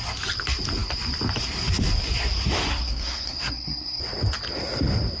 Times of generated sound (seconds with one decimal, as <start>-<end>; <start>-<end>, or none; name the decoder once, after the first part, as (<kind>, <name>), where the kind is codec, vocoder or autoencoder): 2.7-4.0 (codec, SNAC)